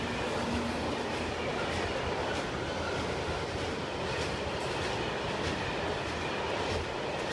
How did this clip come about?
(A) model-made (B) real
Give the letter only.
B